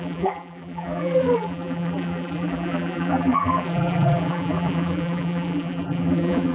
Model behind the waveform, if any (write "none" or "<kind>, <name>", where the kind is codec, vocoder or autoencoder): vocoder, BigVGAN v2